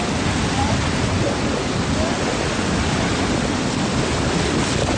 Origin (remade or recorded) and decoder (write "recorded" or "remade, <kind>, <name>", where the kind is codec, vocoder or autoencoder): recorded